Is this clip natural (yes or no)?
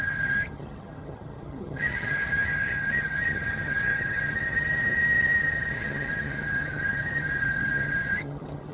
no